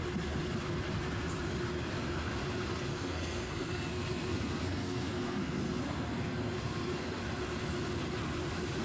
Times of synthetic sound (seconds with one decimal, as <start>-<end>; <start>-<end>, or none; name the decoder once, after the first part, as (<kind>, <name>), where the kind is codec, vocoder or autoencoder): 2.9-7.2 (codec, SNAC)